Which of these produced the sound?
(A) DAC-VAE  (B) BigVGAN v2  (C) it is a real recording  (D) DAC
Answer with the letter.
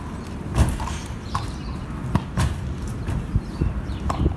C